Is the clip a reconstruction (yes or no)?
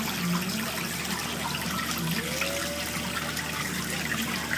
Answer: no